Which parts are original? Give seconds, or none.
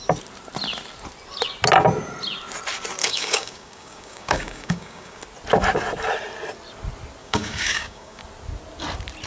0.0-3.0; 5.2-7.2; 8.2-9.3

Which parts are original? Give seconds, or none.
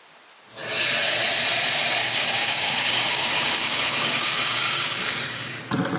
0.0-2.0; 5.6-6.0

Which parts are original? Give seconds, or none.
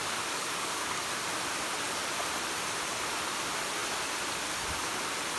1.0-5.4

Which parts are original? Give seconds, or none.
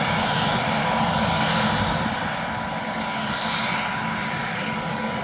0.0-0.8; 1.5-2.8; 3.4-4.4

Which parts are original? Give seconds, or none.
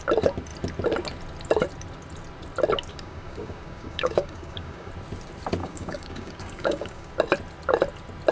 0.0-2.9; 4.9-5.6; 7.1-8.3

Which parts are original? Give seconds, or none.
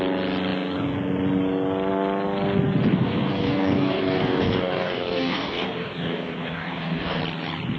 0.0-2.9; 7.2-7.8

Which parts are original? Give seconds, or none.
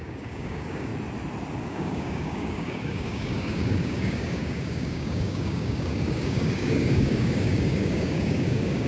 0.9-1.6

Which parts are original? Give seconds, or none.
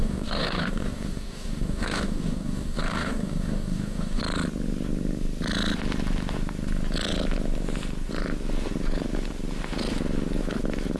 4.2-11.0